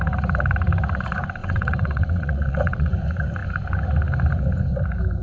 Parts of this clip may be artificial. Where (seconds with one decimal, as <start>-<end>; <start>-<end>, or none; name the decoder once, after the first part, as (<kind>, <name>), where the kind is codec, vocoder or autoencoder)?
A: 1.4-2.9 (vocoder, WaveNeXt)